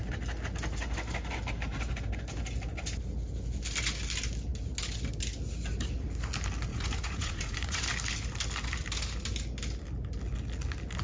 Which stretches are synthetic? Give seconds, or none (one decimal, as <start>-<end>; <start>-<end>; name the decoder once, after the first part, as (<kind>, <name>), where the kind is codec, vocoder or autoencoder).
6.7-7.8 (vocoder, Vocos)